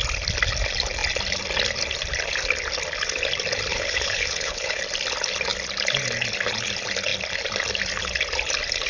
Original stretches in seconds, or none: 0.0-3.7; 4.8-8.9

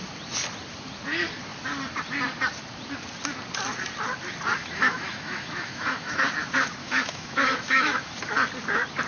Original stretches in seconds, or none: 0.0-4.6; 6.3-6.8; 8.1-9.1

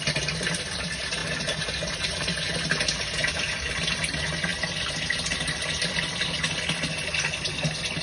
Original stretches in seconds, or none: 0.0-1.2; 2.5-3.2; 3.8-8.0

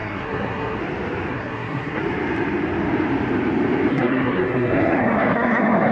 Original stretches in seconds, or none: 0.8-1.3; 2.0-3.9

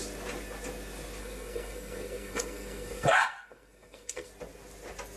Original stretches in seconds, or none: 0.0-1.2; 4.3-5.2